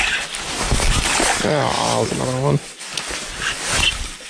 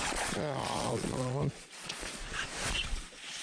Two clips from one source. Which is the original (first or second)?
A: first